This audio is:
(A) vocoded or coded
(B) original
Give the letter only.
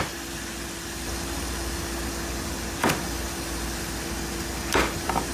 B